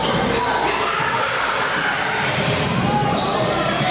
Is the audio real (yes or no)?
yes